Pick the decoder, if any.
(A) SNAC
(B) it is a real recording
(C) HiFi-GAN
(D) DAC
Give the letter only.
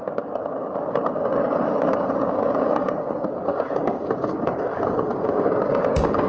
D